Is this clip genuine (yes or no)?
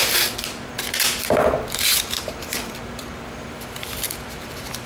no